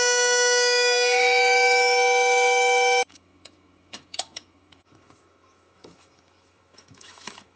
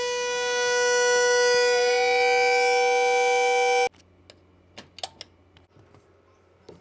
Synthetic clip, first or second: first